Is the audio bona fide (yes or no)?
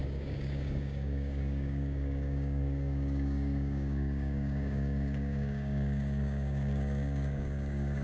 no